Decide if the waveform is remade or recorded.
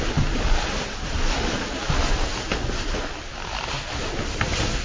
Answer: recorded